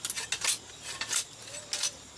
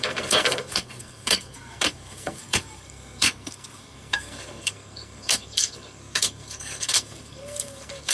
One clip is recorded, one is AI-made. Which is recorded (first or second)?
first